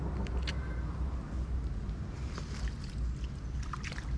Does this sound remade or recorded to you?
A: recorded